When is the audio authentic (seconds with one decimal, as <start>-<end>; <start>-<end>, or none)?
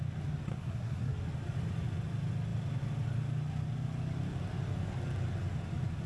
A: 0.0-0.5; 1.2-6.1